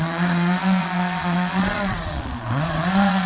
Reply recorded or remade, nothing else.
remade